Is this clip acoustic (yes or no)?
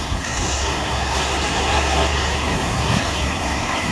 no